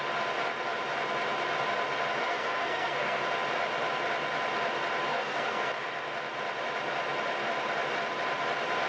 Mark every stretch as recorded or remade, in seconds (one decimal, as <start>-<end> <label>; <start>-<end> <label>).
0.0-2.2 recorded; 2.2-3.2 remade; 3.2-5.1 recorded; 5.1-5.7 remade; 5.7-8.9 recorded